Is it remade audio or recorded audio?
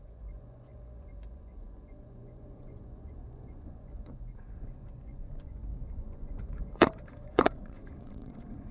remade